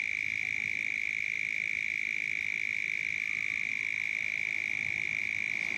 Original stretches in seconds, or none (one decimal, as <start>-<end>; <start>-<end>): 0.0-5.8